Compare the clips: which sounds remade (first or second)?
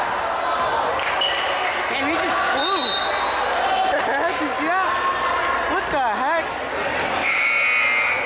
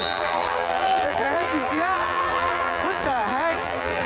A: second